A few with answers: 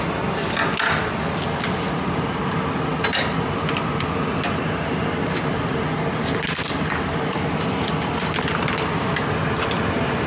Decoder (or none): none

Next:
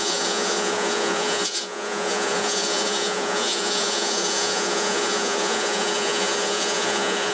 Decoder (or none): vocoder, Vocos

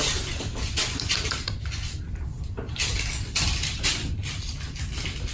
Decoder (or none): none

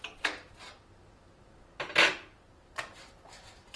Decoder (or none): none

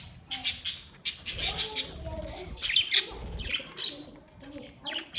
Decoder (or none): none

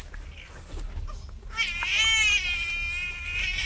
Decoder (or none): none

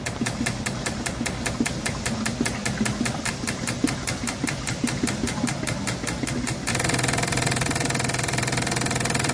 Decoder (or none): none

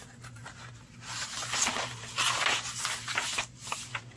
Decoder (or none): none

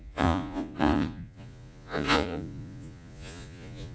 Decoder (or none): vocoder, Vocos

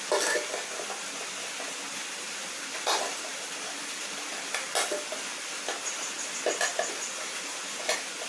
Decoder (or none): none